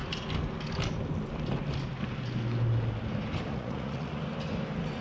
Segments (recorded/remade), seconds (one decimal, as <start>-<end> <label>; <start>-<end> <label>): 0.0-3.5 recorded; 3.5-4.2 remade; 4.2-5.0 recorded